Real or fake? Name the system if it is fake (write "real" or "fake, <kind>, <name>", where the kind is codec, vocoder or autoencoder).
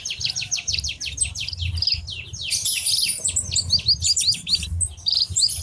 real